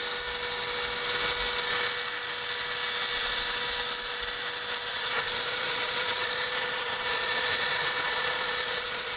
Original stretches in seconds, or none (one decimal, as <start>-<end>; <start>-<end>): 0.0-4.9